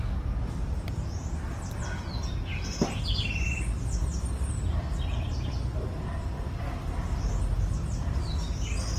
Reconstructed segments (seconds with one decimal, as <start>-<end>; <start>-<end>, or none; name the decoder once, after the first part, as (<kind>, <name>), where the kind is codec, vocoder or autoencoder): none